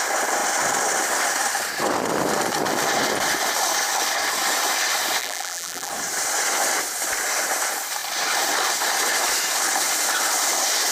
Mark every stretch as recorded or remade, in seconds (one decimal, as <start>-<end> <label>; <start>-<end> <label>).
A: 0.0-5.2 recorded; 5.2-5.9 remade; 5.9-10.9 recorded